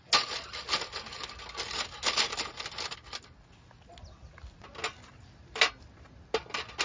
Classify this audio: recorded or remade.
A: recorded